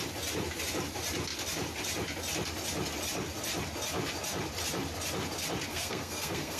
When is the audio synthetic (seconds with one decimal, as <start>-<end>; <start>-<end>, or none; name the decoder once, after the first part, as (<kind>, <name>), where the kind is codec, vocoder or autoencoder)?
5.7-6.6 (codec, SNAC)